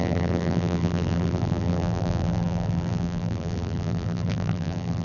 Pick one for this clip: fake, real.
fake